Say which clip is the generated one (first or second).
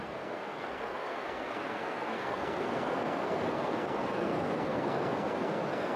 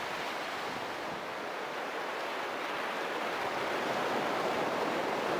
first